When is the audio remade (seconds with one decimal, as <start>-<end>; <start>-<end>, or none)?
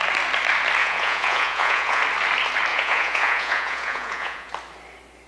0.8-2.0; 2.7-4.5